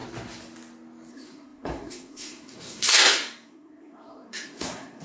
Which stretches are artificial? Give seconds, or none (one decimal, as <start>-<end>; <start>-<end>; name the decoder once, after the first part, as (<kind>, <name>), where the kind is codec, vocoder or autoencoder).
1.1-5.0 (codec, SNAC)